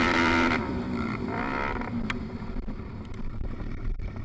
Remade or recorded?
remade